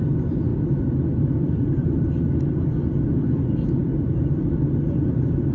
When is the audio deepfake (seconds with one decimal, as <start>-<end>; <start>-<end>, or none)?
none